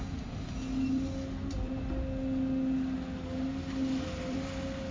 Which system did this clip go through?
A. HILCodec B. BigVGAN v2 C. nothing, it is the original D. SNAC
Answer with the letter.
C